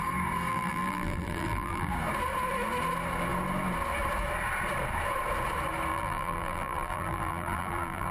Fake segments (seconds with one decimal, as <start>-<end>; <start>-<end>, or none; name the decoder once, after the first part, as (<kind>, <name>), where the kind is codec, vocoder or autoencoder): 0.5-1.9 (vocoder, BigVGAN v2); 5.9-8.1